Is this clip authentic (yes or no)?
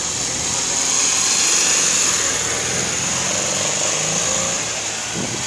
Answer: yes